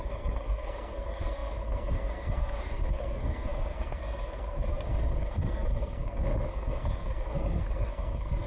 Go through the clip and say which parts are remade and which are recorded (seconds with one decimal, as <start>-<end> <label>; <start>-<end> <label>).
0.0-8.5 remade